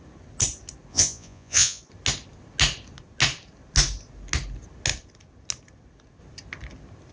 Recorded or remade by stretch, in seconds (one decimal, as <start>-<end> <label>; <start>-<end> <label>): 0.0-0.9 recorded; 0.9-1.8 remade; 1.8-7.1 recorded